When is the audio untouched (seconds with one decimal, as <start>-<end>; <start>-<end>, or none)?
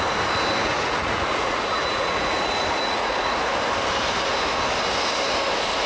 0.0-0.6; 3.5-5.9